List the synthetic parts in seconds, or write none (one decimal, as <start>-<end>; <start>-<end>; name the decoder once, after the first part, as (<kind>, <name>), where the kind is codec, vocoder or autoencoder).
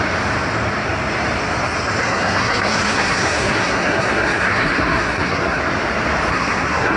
2.0-5.6 (codec, SNAC); 6.3-7.0